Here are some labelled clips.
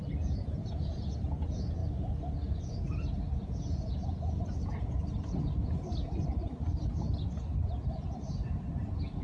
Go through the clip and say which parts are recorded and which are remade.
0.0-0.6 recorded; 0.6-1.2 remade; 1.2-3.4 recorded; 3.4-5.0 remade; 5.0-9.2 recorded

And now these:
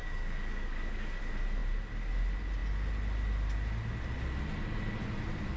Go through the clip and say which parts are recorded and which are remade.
0.0-1.2 remade; 1.2-5.6 recorded

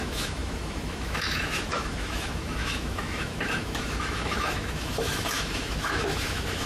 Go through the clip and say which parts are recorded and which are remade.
0.0-6.7 remade

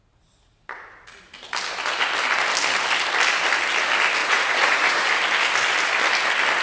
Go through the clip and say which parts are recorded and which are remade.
0.0-4.2 recorded; 4.2-5.1 remade; 5.1-6.6 recorded

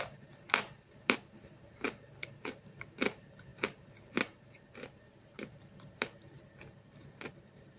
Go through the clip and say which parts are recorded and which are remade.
0.0-3.5 remade; 3.5-4.0 recorded; 4.0-7.8 remade